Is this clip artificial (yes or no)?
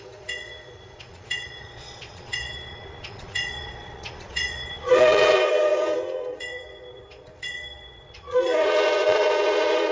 yes